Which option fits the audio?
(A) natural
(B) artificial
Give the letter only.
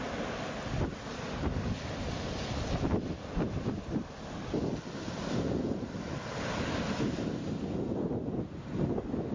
A